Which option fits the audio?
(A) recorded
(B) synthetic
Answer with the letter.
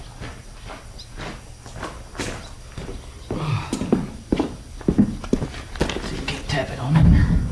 A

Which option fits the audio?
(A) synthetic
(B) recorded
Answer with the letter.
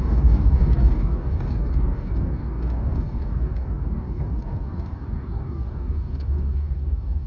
A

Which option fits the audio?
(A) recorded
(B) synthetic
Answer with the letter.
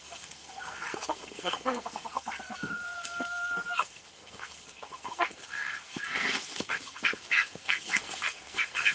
B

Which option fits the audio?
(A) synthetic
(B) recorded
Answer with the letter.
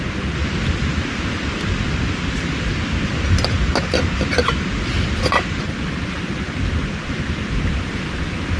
B